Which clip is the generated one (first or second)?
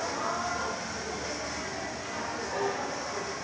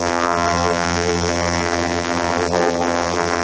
second